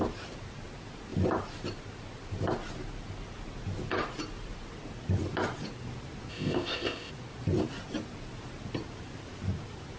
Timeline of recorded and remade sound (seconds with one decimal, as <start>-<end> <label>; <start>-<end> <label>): 0.0-6.3 recorded; 6.3-7.1 remade; 7.1-10.0 recorded